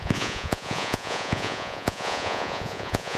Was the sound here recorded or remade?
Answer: remade